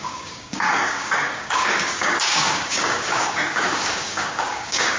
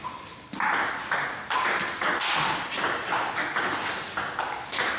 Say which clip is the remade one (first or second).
first